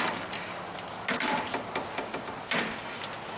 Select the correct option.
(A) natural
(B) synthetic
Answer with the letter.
A